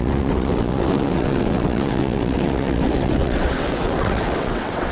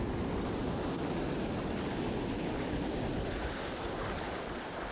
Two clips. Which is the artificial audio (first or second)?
first